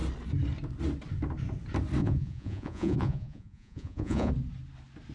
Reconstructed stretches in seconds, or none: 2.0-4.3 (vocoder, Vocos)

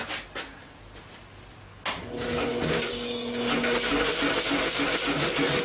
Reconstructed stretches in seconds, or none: none

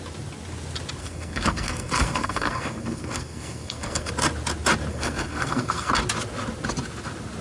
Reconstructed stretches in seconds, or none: 1.0-4.1 (codec, SNAC); 4.9-5.9

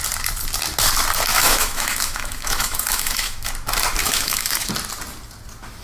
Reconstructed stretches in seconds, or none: 1.3-3.5 (autoencoder, DAC-VAE); 4.0-4.7

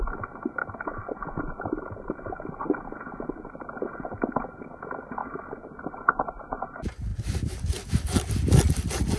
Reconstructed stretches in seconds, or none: none

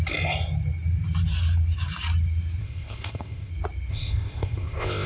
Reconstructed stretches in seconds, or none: 2.6-3.5 (codec, ZipCodec); 3.9-5.1